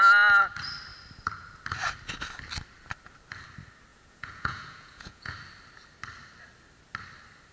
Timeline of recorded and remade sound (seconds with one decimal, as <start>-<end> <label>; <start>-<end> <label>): 0.0-3.9 recorded; 3.9-5.3 remade; 5.3-7.5 recorded